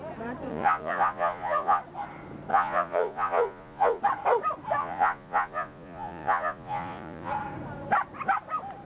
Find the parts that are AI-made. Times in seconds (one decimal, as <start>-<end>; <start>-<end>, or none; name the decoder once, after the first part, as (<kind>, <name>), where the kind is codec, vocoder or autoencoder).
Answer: 0.5-1.8 (vocoder, Vocos); 2.5-4.0; 4.8-7.3